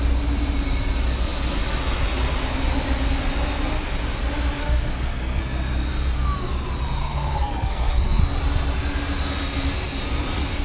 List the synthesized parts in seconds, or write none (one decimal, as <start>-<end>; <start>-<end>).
4.6-5.4; 7.0-8.2